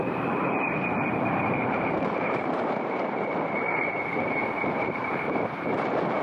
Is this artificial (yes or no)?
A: yes